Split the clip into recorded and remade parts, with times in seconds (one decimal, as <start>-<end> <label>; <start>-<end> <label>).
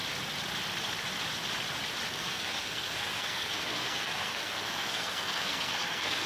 0.0-2.1 recorded; 2.1-6.3 remade